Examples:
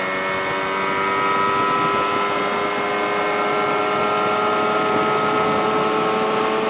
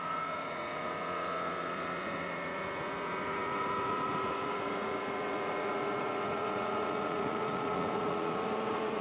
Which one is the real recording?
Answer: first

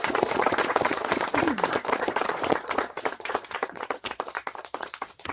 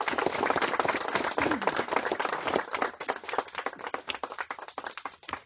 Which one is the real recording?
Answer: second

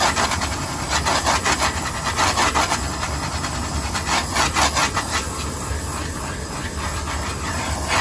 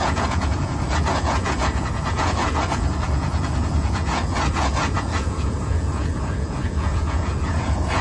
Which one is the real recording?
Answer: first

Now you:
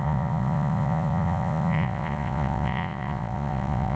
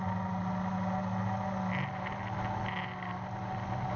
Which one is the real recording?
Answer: second